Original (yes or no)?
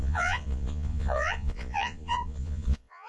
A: no